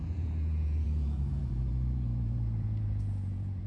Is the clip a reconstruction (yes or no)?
yes